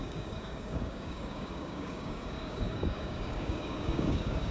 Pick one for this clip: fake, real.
fake